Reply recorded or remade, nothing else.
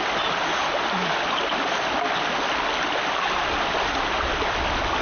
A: recorded